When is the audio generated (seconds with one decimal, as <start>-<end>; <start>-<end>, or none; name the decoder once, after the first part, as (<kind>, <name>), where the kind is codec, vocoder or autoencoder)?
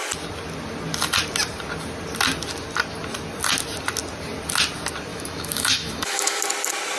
5.1-6.4 (autoencoder, DAC-VAE)